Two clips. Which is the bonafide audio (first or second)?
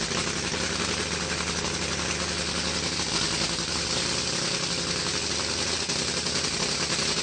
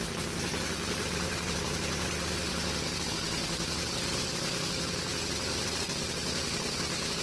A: first